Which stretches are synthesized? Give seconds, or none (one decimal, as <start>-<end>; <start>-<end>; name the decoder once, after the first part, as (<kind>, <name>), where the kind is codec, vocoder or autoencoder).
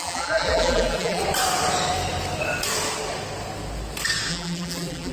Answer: 0.0-1.2 (vocoder, BigVGAN v2); 4.3-5.1